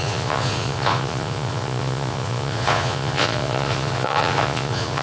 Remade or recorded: remade